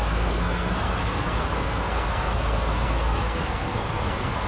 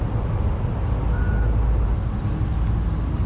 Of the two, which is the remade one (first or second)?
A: first